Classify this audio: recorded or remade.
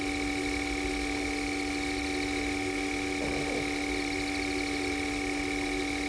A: recorded